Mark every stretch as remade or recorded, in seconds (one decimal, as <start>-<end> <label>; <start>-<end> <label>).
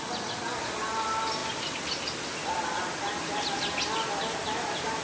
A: 0.0-5.0 recorded